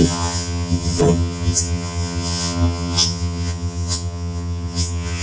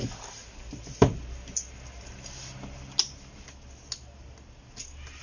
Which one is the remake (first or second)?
first